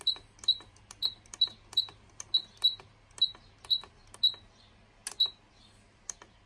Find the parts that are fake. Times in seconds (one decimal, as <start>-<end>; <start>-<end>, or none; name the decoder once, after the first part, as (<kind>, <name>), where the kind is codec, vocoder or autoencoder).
none